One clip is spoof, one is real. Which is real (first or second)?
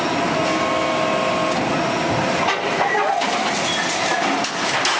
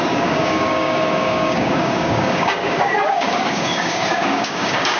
first